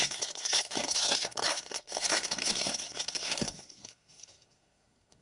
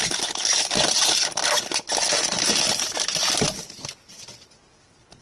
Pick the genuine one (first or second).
second